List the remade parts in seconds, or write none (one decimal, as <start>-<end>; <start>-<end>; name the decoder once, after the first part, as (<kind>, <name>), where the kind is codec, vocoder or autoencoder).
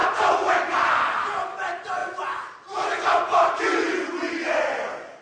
none